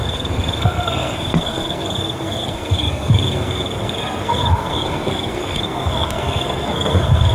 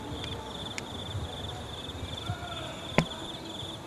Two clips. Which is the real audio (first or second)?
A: second